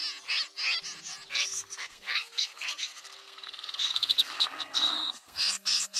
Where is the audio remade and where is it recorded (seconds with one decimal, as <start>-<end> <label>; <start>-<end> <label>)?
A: 0.0-1.3 recorded; 1.3-6.0 remade